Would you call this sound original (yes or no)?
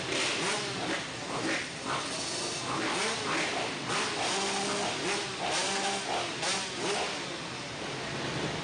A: yes